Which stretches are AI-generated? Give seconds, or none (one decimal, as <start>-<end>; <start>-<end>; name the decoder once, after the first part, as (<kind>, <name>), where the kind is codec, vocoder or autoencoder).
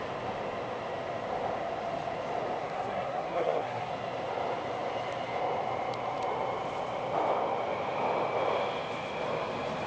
2.6-3.9 (codec, SNAC)